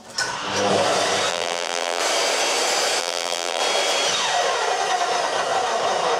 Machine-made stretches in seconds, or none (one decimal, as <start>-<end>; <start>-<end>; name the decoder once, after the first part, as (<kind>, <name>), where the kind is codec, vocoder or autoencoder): 1.3-2.0 (vocoder, BigVGAN v2); 3.0-3.6